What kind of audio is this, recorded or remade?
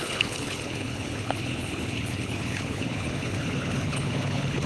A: remade